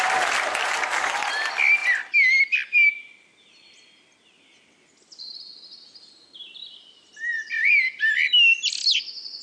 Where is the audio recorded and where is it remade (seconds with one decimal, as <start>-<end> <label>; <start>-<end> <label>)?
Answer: 0.0-7.1 recorded; 7.1-8.6 remade; 8.6-9.4 recorded